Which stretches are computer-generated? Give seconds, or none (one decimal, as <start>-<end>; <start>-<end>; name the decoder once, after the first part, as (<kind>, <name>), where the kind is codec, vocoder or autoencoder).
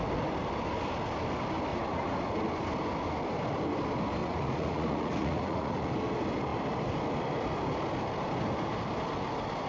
1.7-2.3 (vocoder, Vocos); 4.2-5.9